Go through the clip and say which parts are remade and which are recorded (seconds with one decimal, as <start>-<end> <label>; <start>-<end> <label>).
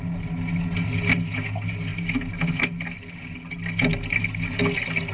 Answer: 0.0-5.1 recorded